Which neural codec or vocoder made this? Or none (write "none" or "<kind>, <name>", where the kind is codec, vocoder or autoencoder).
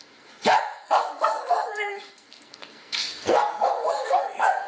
codec, SNAC